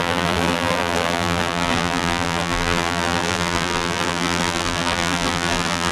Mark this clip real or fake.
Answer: fake